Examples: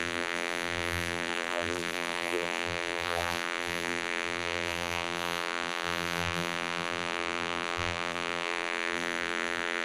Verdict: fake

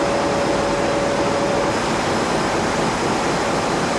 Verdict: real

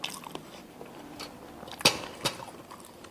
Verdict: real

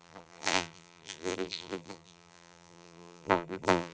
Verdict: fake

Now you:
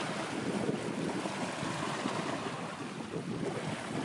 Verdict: real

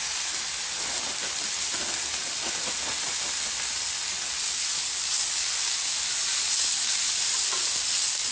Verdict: real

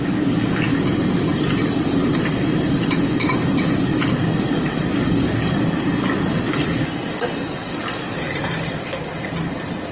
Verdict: real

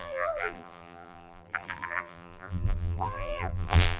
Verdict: fake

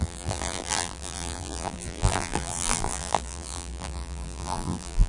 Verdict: fake